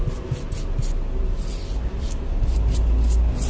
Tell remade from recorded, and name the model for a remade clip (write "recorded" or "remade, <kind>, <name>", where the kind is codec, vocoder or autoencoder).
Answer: recorded